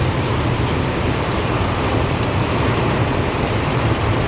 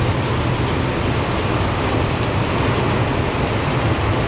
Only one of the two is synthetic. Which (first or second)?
first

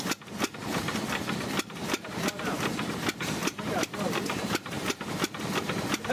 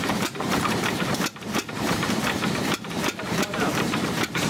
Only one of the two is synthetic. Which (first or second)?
second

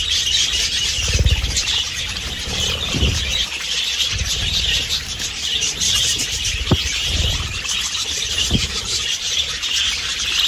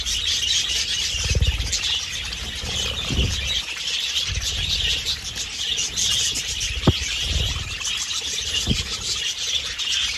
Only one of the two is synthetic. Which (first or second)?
first